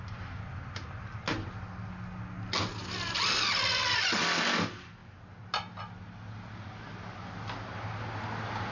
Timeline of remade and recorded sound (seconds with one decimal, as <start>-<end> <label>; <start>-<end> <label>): 0.0-8.7 recorded